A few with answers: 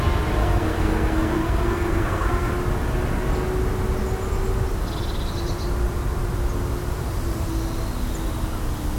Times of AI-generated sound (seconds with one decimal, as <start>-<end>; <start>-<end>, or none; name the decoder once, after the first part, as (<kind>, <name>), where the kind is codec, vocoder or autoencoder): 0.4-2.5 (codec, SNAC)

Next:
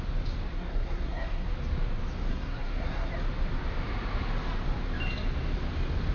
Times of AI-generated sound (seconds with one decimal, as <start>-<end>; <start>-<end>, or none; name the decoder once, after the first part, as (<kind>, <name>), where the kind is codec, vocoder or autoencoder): 0.5-1.5 (codec, SNAC); 2.3-3.1

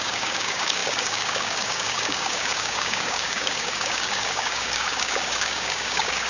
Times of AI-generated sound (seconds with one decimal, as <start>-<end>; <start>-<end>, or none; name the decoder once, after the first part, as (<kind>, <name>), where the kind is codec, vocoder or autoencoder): 0.0-6.3 (codec, DAC)

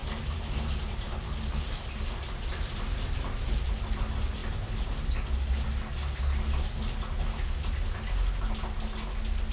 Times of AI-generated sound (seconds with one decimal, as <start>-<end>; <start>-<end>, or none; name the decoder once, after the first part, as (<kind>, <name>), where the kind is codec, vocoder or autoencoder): 0.0-3.7 (vocoder, BigVGAN v2)